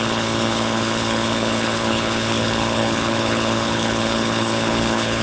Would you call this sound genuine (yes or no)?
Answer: no